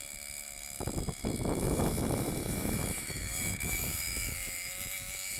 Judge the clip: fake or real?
fake